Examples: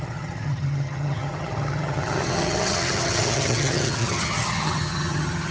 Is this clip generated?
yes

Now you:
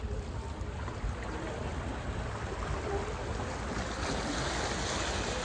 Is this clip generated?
no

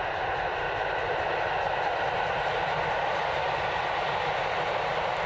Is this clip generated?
no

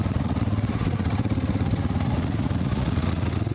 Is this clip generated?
yes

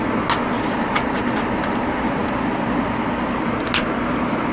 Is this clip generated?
no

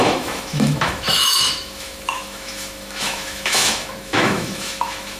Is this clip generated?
yes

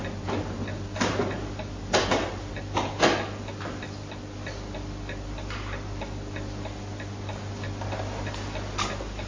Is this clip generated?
no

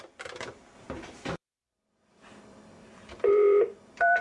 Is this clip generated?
yes